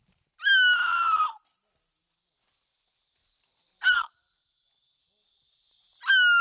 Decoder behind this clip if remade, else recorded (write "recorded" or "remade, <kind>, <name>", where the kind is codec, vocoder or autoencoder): recorded